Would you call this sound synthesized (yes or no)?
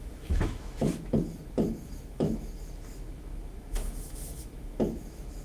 yes